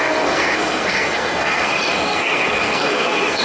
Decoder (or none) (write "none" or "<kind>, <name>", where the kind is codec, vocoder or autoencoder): codec, SNAC